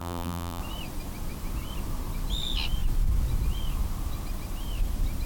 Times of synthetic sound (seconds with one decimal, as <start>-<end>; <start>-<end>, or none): 0.0-0.6